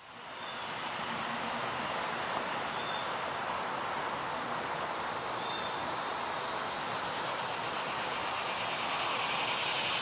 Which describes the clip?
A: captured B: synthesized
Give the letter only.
A